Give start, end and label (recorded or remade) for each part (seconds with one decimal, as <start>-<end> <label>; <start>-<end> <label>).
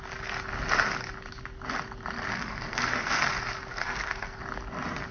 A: 0.0-2.3 recorded; 2.3-3.3 remade; 3.3-3.7 recorded; 3.7-4.4 remade; 4.4-5.1 recorded